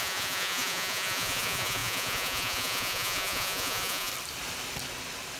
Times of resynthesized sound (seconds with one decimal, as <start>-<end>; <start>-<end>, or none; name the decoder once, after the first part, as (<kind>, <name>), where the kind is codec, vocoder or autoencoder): 0.0-4.1 (vocoder, Vocos)